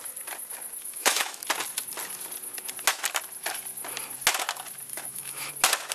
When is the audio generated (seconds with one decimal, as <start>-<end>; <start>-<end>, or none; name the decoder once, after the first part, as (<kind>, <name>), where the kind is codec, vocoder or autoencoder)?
0.8-1.4 (autoencoder, DAC-VAE); 4.9-5.5